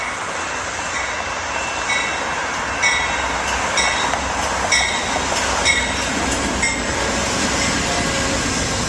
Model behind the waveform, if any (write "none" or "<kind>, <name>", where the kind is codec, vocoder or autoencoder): none